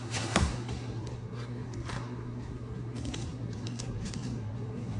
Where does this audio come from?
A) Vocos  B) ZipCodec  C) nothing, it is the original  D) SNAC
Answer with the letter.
D